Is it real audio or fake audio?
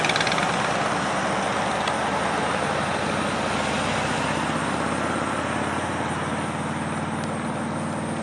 real